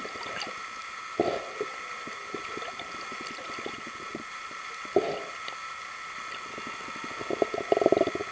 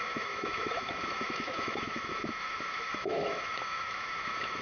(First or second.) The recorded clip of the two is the first